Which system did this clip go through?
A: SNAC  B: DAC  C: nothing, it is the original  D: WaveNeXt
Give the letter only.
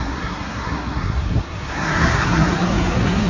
A